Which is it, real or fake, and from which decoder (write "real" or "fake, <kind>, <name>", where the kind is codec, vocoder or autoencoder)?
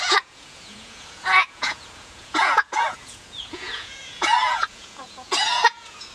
fake, vocoder, Vocos